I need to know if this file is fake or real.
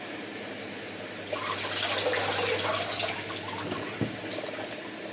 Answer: real